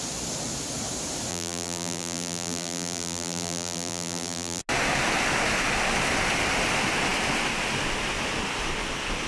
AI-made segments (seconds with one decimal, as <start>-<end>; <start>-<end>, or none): 1.3-4.6